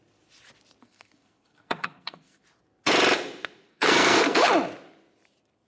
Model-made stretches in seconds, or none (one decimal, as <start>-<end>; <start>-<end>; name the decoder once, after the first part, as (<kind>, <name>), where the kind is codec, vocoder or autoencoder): 0.8-2.4 (codec, SNAC); 3.7-4.5